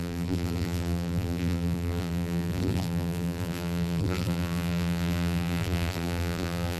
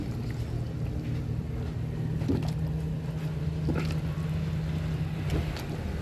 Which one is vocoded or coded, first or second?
first